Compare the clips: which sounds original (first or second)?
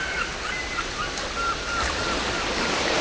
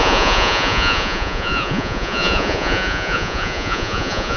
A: first